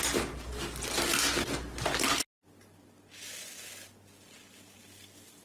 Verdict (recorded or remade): recorded